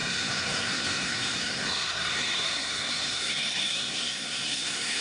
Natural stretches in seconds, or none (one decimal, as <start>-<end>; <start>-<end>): none